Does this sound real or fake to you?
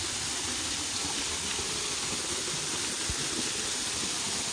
real